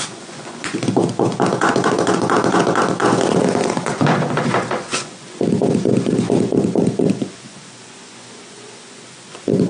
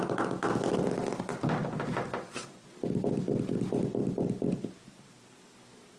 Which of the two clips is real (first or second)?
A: second